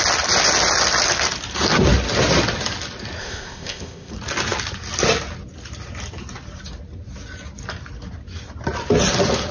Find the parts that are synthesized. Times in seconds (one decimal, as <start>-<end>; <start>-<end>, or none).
3.2-4.1